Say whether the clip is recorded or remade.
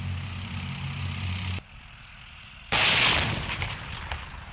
recorded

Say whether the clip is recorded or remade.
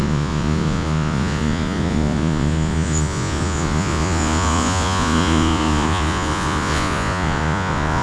remade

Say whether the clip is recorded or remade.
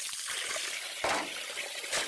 recorded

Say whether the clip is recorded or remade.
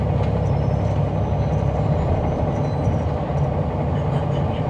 recorded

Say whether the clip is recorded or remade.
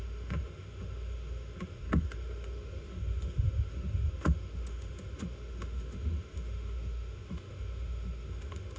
remade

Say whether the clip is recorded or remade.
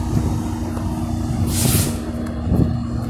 recorded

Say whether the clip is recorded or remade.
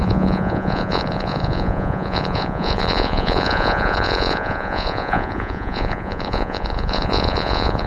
remade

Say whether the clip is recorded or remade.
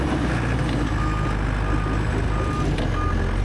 recorded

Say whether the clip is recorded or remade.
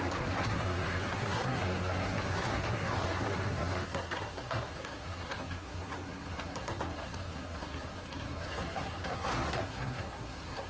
remade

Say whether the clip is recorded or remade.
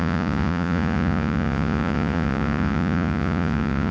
remade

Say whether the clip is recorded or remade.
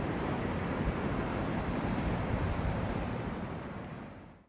remade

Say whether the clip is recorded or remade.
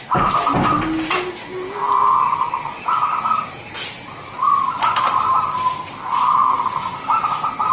recorded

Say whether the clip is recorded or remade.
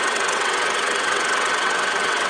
remade